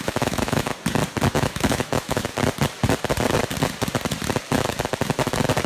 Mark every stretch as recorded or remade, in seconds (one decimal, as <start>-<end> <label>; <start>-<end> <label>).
0.0-0.7 remade; 0.7-1.3 recorded; 1.3-2.3 remade; 2.3-5.7 recorded